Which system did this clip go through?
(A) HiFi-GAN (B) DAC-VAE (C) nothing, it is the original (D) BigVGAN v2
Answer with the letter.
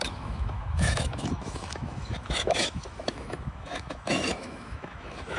B